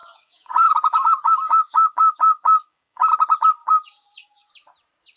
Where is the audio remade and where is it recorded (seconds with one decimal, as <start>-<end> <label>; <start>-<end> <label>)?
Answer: 0.0-3.1 remade; 3.1-3.6 recorded; 3.6-4.5 remade; 4.5-5.2 recorded